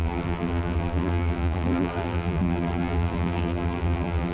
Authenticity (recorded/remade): remade